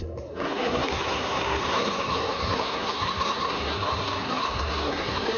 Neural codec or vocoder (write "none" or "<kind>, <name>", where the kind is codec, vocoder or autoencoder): codec, SNAC